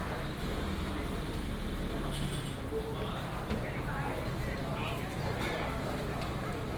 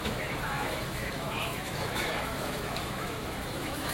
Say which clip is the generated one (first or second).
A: second